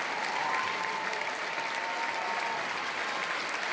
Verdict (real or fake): fake